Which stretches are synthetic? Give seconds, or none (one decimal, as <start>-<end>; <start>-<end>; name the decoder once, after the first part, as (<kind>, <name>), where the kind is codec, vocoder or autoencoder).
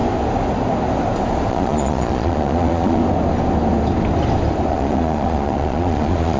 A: 1.5-3.0 (vocoder, Vocos); 4.7-6.4